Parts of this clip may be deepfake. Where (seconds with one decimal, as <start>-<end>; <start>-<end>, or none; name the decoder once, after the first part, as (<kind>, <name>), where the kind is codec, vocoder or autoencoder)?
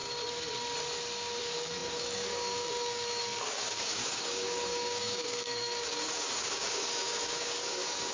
1.4-8.1 (codec, DAC)